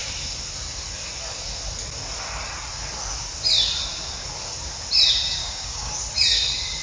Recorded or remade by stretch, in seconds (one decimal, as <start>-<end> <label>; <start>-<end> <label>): 0.0-5.4 recorded; 5.4-5.9 remade; 5.9-6.8 recorded